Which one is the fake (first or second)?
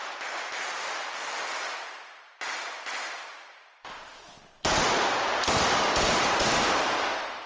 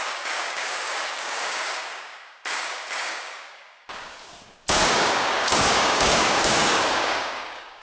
second